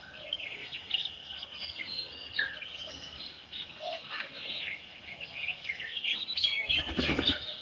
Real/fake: fake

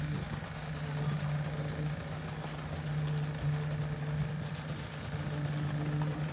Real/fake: real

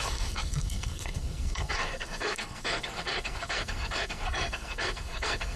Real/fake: fake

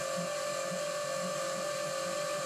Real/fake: real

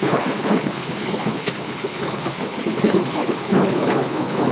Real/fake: fake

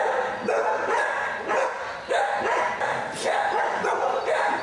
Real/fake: real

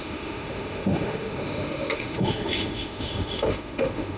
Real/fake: fake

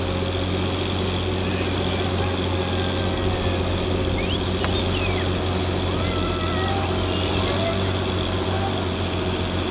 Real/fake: real